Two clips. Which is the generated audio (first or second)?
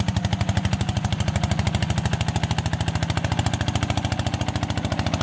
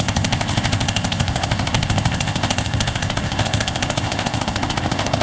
second